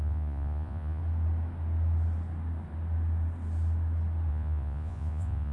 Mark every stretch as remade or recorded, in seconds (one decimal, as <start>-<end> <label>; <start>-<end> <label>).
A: 0.0-1.0 remade; 1.0-4.3 recorded; 4.3-5.5 remade